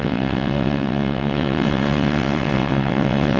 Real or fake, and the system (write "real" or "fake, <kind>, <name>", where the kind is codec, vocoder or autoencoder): fake, vocoder, WaveNeXt